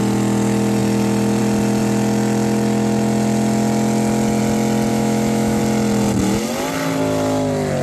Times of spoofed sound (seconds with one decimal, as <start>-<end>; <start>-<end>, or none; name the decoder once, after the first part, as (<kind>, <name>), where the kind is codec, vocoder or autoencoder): 4.9-5.6 (autoencoder, DAC-VAE)